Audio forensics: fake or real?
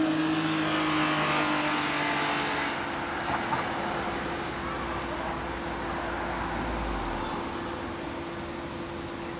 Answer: real